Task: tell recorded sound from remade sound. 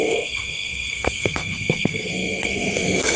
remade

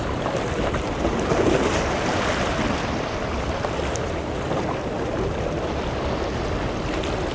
recorded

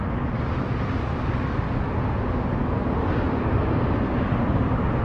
recorded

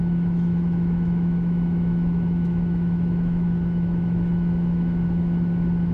remade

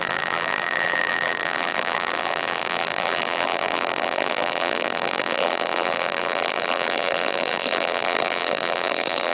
remade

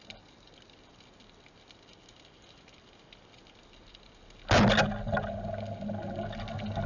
recorded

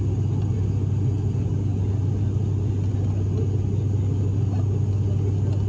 recorded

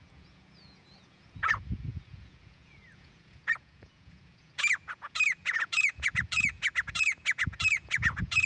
remade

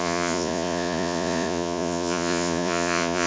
remade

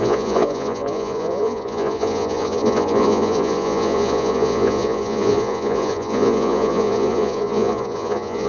remade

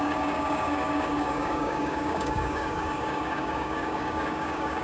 remade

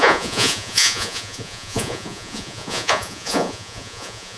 remade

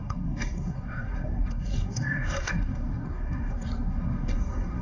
remade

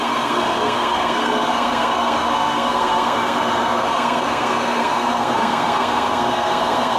remade